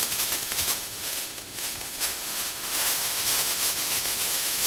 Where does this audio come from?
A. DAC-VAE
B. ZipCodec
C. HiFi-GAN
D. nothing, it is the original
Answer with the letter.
A